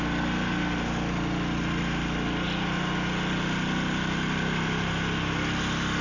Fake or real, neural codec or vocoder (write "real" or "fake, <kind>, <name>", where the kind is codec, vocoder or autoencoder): real